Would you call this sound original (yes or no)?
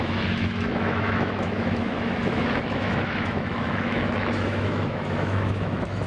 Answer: no